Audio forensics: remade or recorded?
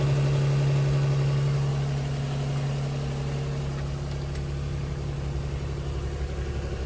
recorded